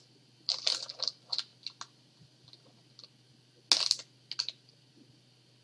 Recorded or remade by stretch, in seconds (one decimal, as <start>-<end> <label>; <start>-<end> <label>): 0.0-5.6 recorded